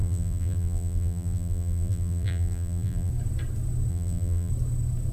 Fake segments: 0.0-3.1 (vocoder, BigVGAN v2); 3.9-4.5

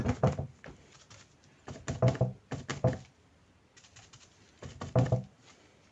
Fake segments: none

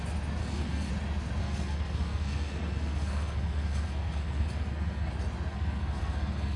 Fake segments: 0.4-0.9 (codec, SNAC); 1.4-5.1; 5.5-6.6

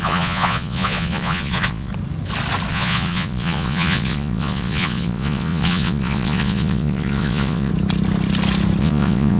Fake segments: 0.0-1.9 (vocoder, Vocos); 2.7-7.7; 8.8-9.4